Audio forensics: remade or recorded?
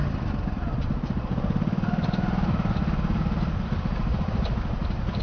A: recorded